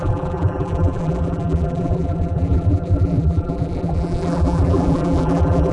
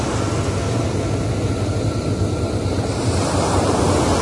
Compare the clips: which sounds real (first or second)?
second